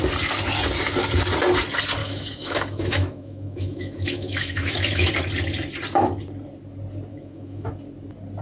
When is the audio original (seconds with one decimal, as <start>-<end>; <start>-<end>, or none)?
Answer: 0.0-2.0; 5.1-7.1; 7.7-8.4